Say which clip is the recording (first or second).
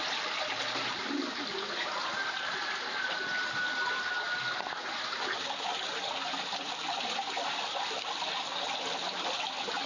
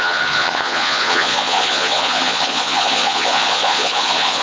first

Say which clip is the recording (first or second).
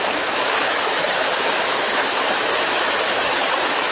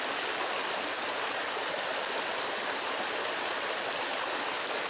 second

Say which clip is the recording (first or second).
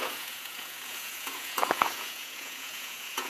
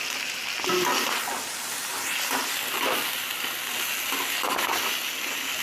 second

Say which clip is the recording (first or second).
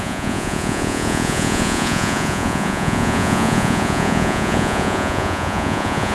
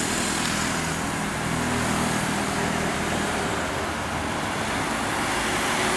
second